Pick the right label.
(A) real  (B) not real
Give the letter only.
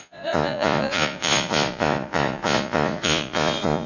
B